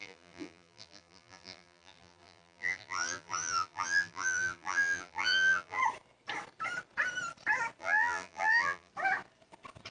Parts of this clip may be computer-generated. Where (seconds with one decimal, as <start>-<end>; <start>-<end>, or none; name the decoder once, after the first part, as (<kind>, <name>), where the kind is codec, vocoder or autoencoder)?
0.0-5.8 (vocoder, BigVGAN v2); 7.8-8.9